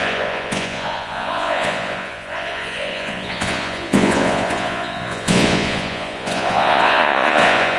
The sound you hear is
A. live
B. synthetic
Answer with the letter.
B